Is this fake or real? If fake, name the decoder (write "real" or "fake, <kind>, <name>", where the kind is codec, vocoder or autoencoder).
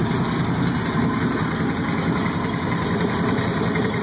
fake, vocoder, BigVGAN v2